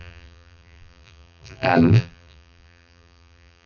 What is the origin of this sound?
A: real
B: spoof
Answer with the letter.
B